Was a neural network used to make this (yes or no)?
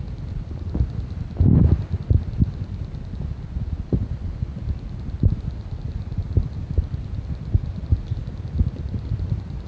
no